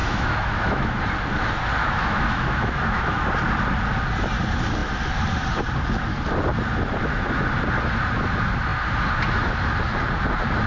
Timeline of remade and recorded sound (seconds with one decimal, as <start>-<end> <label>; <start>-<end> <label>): 0.0-1.0 remade; 1.0-1.8 recorded; 1.8-3.3 remade; 3.3-10.7 recorded